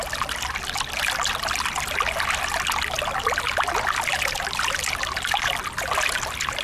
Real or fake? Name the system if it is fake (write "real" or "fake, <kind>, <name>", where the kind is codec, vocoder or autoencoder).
real